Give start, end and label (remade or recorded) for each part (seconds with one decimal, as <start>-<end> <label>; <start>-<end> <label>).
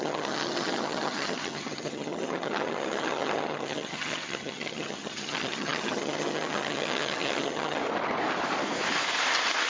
0.0-7.8 remade; 7.8-9.7 recorded